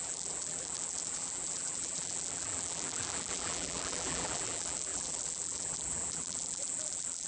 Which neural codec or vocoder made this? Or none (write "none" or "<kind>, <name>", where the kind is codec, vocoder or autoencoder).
vocoder, BigVGAN v2